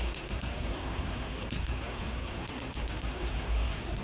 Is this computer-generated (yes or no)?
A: yes